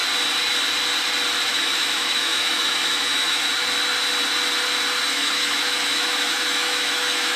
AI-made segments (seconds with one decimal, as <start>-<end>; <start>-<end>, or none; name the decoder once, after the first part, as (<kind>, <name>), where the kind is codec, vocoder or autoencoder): 1.5-3.4 (autoencoder, DAC-VAE); 5.1-7.4